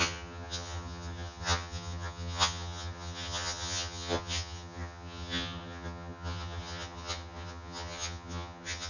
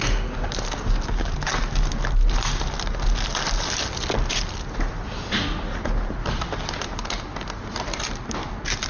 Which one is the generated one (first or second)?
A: first